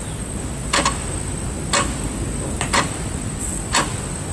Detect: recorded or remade recorded